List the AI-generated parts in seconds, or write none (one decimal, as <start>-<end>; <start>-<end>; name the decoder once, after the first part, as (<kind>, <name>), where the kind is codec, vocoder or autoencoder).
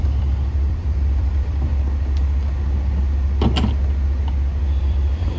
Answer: 0.0-1.7 (vocoder, BigVGAN v2); 4.8-5.4